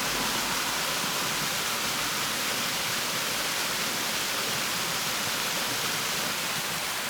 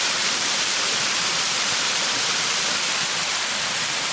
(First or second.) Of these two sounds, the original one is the first